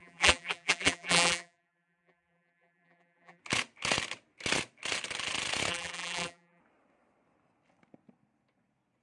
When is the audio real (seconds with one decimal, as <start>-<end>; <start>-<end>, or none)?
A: 3.4-5.7; 6.6-9.0